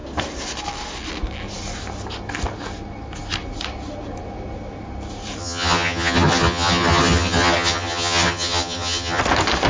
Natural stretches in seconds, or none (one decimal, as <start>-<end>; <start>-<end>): 0.0-5.4; 9.2-9.7